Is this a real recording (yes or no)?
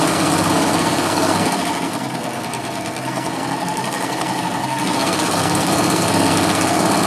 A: no